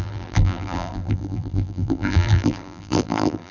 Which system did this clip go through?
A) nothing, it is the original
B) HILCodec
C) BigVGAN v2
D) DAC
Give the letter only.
C